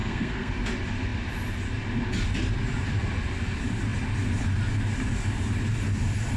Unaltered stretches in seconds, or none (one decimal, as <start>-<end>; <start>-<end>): 0.5-6.4

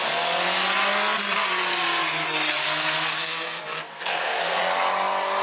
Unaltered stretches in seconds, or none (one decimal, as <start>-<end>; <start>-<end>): 0.0-2.6; 4.6-5.4